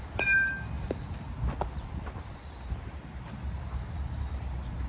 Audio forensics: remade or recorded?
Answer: recorded